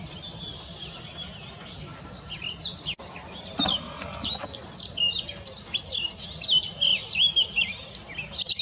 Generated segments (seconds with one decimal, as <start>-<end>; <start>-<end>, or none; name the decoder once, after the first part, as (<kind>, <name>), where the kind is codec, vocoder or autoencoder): none